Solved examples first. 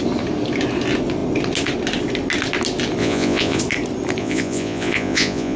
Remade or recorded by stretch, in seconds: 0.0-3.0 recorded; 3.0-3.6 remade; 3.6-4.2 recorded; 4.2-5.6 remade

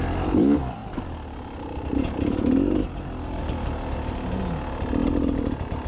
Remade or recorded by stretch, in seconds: 0.0-5.9 recorded